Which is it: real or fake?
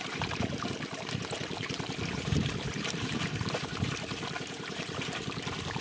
fake